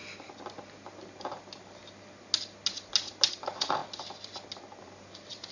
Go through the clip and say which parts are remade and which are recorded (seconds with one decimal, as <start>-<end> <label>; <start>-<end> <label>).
0.0-3.3 recorded; 3.3-3.8 remade; 3.8-4.8 recorded; 4.8-5.5 remade